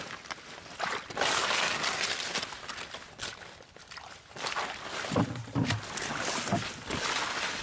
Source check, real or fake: real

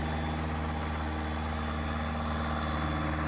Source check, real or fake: real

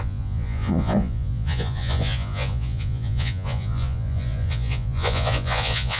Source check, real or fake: fake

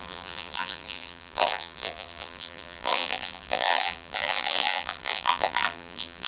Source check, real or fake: fake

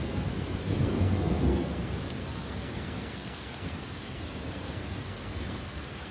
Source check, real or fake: fake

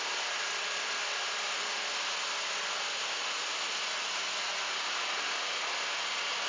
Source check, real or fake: real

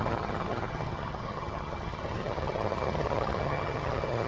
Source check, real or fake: fake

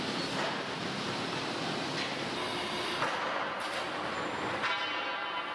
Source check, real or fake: real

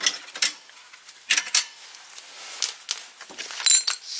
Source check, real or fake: real